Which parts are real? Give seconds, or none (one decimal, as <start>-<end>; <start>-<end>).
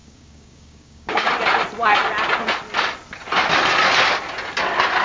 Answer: 1.3-5.0